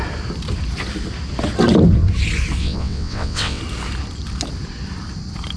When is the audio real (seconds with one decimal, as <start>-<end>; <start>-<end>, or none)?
0.0-2.6; 3.6-5.6